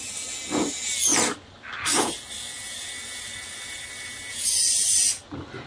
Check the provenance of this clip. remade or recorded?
recorded